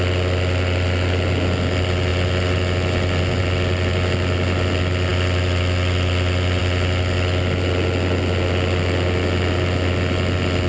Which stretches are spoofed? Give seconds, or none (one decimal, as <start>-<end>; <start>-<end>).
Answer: none